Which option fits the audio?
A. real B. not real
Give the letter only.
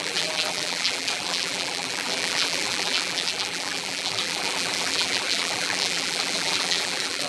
B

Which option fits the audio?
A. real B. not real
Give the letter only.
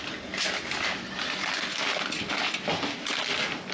A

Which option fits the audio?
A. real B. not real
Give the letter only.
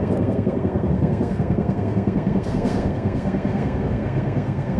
B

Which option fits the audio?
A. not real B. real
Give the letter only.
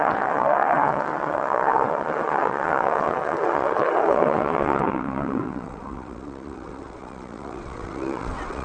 A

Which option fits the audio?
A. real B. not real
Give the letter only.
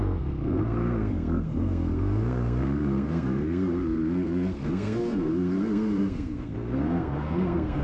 B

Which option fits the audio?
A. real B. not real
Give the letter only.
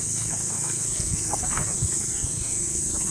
B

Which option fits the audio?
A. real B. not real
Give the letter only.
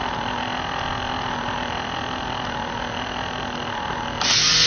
A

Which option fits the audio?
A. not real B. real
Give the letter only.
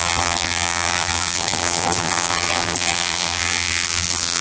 A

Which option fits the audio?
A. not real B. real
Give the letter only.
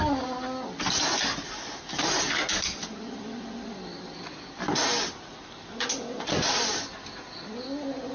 B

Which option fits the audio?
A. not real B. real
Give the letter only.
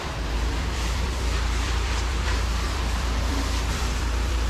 A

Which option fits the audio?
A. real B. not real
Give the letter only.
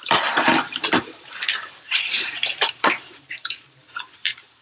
B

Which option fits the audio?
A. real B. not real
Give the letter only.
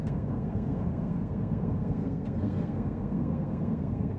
B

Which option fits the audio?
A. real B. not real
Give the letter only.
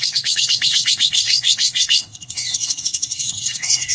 B